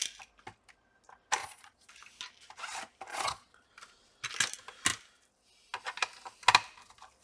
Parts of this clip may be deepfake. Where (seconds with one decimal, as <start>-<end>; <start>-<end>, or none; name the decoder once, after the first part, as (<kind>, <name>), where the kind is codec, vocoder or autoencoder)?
1.4-1.9 (vocoder, Vocos); 3.1-3.7